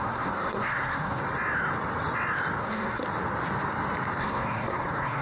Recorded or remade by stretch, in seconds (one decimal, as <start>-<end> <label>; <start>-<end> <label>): 0.0-1.2 remade; 1.2-2.6 recorded; 2.6-3.0 remade; 3.0-4.2 recorded; 4.2-5.2 remade